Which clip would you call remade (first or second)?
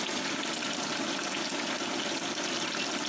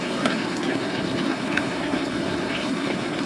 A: second